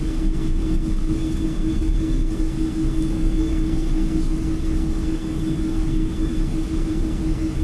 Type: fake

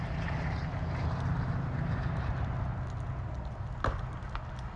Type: real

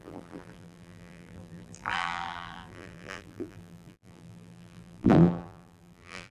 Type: fake